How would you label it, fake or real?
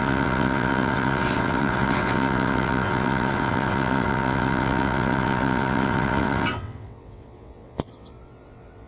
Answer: fake